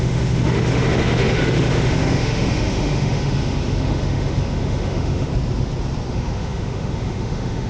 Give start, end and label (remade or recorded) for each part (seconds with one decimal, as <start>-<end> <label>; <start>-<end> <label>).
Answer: 0.0-5.3 remade; 5.3-6.1 recorded; 6.1-7.7 remade